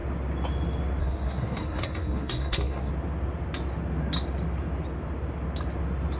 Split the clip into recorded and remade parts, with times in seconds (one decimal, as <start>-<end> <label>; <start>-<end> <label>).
0.0-1.0 recorded; 1.0-2.9 remade; 2.9-6.2 recorded